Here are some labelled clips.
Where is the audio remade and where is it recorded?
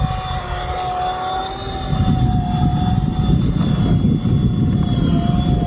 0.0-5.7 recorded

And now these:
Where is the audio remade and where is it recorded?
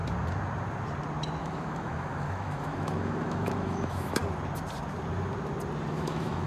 0.0-1.4 recorded; 1.4-4.2 remade; 4.2-5.9 recorded; 5.9-6.5 remade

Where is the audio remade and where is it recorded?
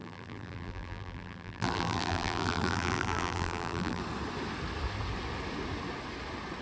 0.0-4.0 remade; 4.0-6.6 recorded